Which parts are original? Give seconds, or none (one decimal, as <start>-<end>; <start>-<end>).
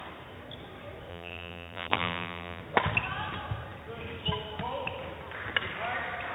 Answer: 0.0-1.1; 2.6-6.3